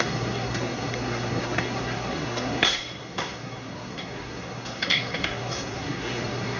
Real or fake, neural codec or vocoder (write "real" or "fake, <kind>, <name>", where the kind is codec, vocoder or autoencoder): fake, codec, SNAC